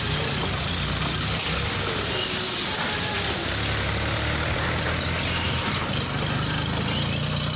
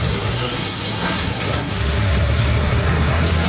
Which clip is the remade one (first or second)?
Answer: second